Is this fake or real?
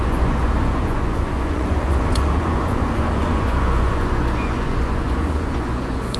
fake